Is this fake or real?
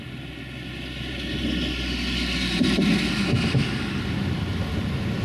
real